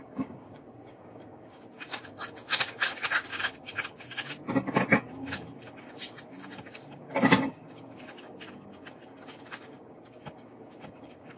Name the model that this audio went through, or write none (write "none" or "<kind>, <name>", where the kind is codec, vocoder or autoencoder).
codec, DAC